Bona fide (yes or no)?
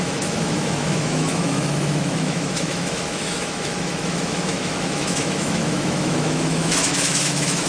no